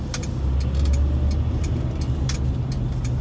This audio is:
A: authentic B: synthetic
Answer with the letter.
A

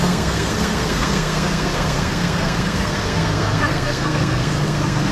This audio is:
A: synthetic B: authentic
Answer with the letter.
A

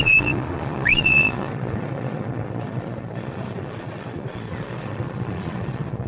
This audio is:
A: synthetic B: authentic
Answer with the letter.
A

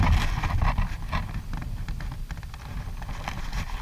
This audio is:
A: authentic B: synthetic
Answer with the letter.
A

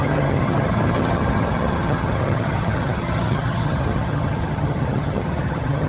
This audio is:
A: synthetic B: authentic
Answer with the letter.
A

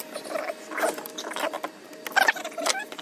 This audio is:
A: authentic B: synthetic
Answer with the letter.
A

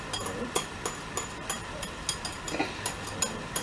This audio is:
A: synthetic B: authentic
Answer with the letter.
B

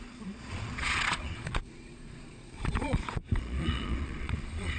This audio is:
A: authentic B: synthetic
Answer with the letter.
B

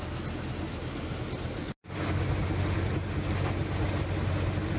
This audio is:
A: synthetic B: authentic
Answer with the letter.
B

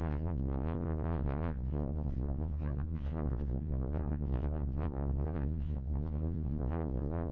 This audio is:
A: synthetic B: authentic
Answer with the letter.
A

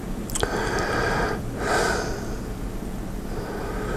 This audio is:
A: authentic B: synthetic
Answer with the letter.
B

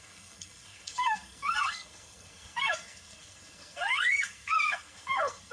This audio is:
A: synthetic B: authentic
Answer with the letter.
A